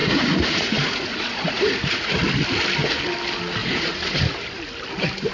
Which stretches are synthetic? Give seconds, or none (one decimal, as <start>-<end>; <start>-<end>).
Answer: 0.0-2.2; 3.6-4.2